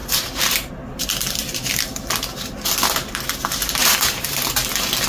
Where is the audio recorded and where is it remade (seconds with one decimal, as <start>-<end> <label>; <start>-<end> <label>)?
0.0-0.7 remade; 0.7-3.8 recorded; 3.8-4.5 remade; 4.5-5.1 recorded